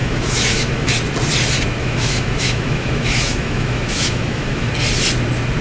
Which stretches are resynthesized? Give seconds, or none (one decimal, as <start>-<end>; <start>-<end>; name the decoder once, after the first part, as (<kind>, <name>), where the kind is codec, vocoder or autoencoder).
0.0-0.9 (autoencoder, DAC-VAE); 1.8-4.7